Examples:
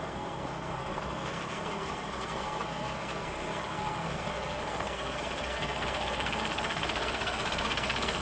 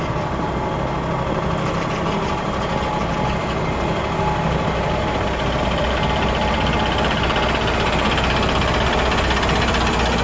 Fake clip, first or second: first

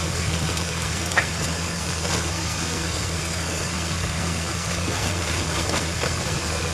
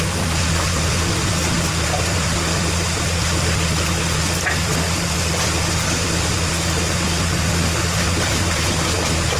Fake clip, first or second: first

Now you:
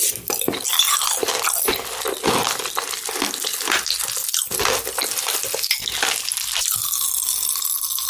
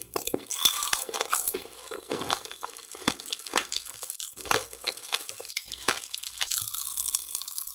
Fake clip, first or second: second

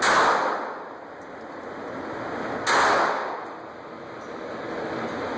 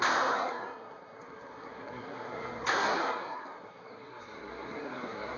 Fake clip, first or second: second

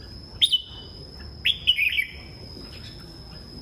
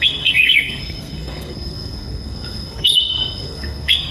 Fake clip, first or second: second